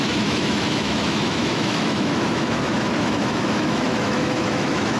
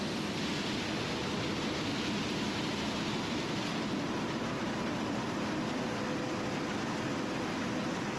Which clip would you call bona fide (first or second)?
second